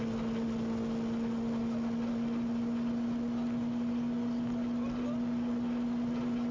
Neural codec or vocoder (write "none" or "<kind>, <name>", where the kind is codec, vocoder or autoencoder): none